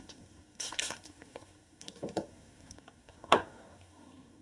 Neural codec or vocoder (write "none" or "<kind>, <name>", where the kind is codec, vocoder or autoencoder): codec, SNAC